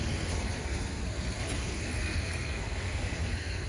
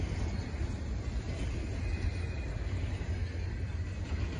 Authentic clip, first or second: second